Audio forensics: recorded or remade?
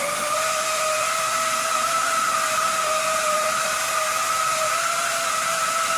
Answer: remade